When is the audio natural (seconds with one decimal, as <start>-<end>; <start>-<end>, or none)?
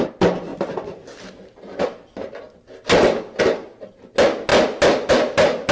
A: 0.0-5.7